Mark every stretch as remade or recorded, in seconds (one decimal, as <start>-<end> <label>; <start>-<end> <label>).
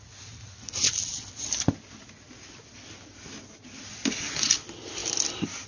0.0-5.7 recorded